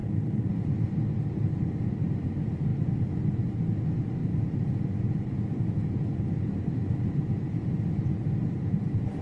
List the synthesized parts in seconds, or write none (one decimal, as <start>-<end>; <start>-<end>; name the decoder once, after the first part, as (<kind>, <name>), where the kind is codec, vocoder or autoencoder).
0.0-2.7 (vocoder, BigVGAN v2); 3.3-9.2